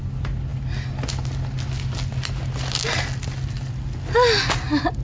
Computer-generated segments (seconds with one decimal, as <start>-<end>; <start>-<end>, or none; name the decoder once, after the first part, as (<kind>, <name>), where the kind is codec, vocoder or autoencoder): none